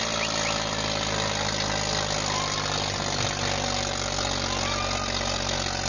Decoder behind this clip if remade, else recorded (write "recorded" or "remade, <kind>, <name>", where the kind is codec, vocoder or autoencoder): recorded